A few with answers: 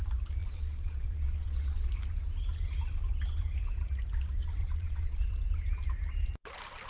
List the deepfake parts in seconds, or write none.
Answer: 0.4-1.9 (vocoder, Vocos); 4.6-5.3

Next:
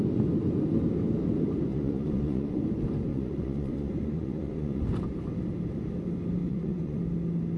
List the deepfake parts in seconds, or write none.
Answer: 1.7-2.6 (vocoder, Vocos); 3.1-4.8; 6.4-7.0

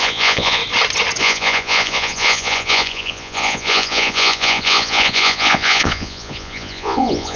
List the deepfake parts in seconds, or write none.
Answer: 0.0-0.6 (vocoder, Vocos); 1.2-7.4

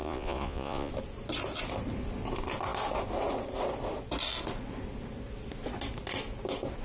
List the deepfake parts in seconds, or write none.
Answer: 0.0-0.9 (vocoder, Vocos)

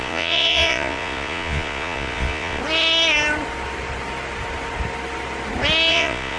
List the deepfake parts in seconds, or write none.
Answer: 0.0-2.6 (vocoder, Vocos); 5.9-6.4

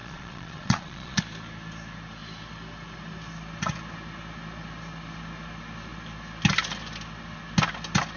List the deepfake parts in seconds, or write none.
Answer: 0.0-1.2 (vocoder, Vocos)

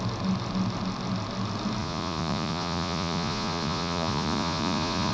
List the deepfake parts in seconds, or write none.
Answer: 1.8-5.1 (vocoder, Vocos)